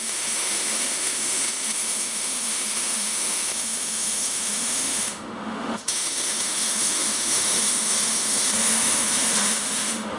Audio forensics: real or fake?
fake